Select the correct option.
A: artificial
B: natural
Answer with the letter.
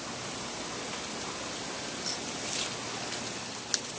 B